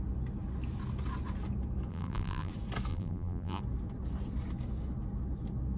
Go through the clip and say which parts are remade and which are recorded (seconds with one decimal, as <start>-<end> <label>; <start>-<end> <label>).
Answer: 0.0-1.9 recorded; 1.9-2.5 remade; 2.5-2.9 recorded; 2.9-3.6 remade; 3.6-5.8 recorded